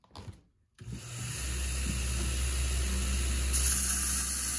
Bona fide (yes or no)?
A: yes